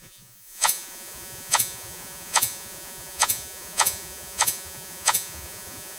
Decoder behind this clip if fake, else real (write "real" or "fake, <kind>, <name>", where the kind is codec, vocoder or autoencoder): fake, vocoder, Vocos